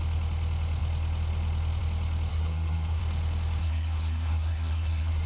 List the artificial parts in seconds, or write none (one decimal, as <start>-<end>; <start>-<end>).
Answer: 2.3-3.0; 3.6-5.3